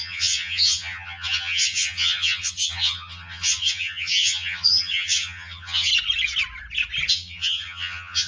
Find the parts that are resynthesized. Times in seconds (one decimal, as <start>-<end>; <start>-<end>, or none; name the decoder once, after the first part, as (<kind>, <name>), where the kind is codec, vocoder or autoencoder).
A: 0.0-5.9 (vocoder, HiFi-GAN); 7.1-8.3

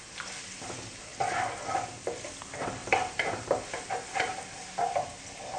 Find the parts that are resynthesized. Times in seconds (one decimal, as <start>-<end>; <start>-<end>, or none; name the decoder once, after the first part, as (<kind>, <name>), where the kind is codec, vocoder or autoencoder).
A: 2.8-3.6 (vocoder, BigVGAN v2); 4.1-4.6